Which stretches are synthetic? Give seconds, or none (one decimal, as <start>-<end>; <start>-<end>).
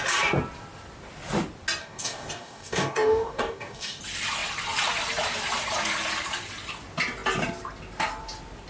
1.8-4.0